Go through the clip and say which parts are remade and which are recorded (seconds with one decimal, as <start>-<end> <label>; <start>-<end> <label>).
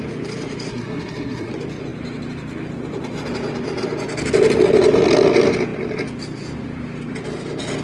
0.0-0.7 recorded; 0.7-1.5 remade; 1.5-7.8 recorded